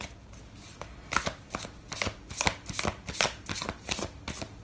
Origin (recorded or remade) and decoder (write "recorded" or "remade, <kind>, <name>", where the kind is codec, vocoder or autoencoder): recorded